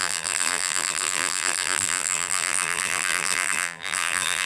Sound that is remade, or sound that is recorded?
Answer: remade